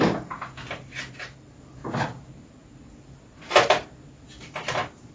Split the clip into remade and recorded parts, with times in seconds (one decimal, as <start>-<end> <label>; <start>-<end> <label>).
0.0-5.1 recorded